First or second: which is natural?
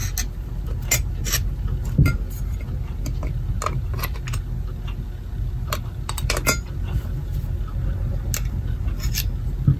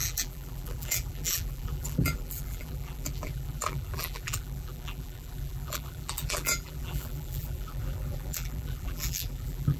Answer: first